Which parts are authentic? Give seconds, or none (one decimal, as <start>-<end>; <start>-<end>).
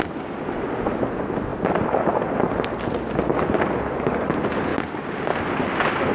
0.0-6.1